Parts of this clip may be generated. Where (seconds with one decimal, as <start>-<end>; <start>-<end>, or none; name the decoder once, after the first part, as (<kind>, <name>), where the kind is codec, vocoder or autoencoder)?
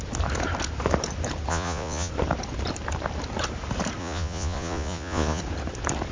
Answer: 1.5-2.1 (vocoder, Vocos); 4.0-5.4